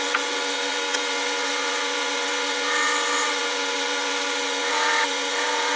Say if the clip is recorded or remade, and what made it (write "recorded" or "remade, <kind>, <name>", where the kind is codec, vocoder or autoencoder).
remade, vocoder, WaveNeXt